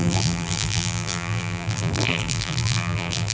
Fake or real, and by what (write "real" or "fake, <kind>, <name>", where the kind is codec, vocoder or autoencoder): fake, vocoder, BigVGAN v2